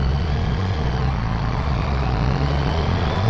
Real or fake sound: fake